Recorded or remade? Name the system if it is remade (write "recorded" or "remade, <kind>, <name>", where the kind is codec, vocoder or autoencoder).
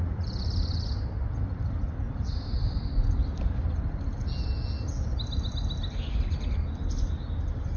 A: recorded